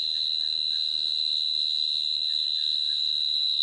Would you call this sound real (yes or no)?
no